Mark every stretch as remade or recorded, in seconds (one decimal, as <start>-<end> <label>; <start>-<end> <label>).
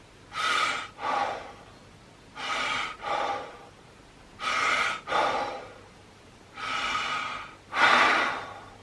0.0-7.9 remade; 7.9-8.4 recorded; 8.4-8.8 remade